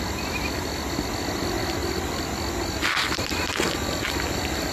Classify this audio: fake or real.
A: real